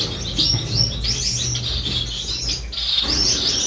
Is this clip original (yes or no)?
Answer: yes